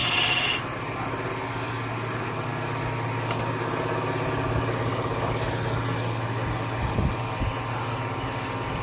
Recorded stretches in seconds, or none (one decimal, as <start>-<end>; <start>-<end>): 0.6-8.8